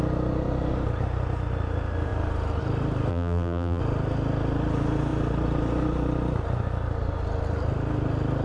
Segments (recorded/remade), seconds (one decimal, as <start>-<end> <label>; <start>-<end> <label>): 0.0-3.1 recorded; 3.1-3.8 remade; 3.8-8.4 recorded